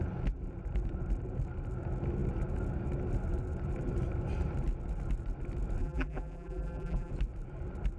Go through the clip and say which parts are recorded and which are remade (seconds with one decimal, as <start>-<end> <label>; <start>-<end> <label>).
0.0-5.8 recorded; 5.8-7.1 remade; 7.1-8.0 recorded